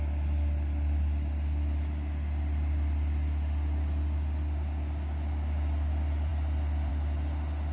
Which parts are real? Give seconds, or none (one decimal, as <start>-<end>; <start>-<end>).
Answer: 0.0-7.7